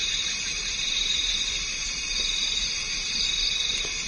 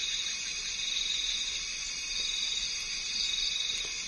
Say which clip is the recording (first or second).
second